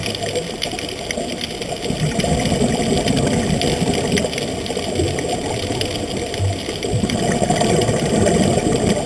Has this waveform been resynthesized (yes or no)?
no